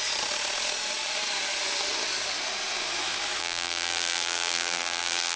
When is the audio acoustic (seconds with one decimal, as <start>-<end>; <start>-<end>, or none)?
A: 0.0-3.4